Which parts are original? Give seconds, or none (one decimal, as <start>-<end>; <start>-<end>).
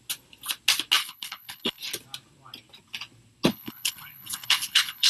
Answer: 0.0-1.0; 1.8-3.5